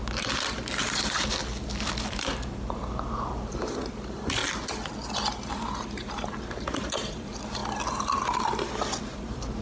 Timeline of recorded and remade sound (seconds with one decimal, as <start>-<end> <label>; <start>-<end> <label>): 0.0-0.8 recorded; 0.8-1.4 remade; 1.4-2.1 recorded; 2.1-4.4 remade; 4.4-5.5 recorded; 5.5-7.6 remade; 7.6-9.0 recorded; 9.0-9.6 remade